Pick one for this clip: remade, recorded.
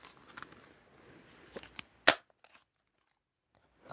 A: recorded